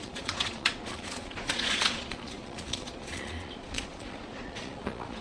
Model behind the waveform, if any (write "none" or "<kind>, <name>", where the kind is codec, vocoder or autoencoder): vocoder, Vocos